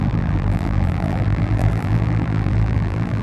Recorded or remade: remade